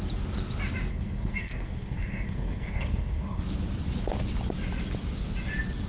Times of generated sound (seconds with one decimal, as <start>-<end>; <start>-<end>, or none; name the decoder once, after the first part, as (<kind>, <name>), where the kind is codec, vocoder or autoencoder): 0.9-3.4 (codec, SNAC)